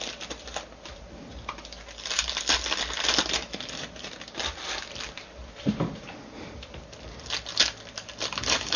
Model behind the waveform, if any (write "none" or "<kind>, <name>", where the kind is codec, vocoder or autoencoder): none